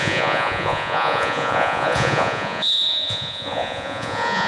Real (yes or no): no